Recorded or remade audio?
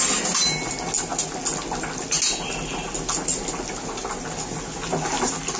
recorded